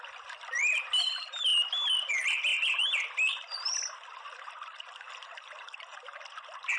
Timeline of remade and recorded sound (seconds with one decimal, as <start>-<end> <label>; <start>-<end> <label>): 0.0-6.8 recorded

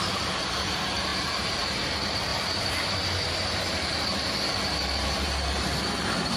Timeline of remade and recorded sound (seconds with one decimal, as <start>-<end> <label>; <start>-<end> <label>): 0.0-2.3 remade; 2.3-2.9 recorded; 2.9-6.4 remade

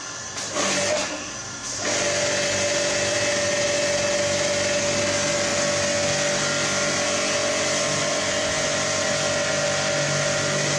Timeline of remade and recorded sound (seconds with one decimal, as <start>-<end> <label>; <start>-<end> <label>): 0.0-10.8 recorded

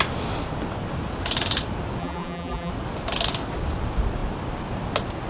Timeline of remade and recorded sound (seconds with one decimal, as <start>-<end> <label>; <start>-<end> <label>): 0.0-2.0 recorded; 2.0-2.7 remade; 2.7-5.3 recorded

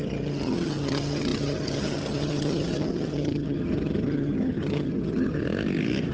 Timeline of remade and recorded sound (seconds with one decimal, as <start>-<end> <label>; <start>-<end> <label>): 0.0-5.4 remade; 5.4-6.1 recorded

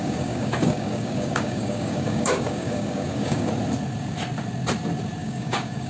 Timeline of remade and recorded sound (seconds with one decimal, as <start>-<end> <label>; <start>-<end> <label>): 0.0-3.5 remade; 3.5-5.2 recorded; 5.2-5.9 remade

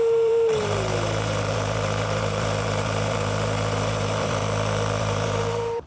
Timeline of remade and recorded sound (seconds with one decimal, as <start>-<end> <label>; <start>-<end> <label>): 0.0-4.4 remade; 4.4-5.0 recorded; 5.0-5.9 remade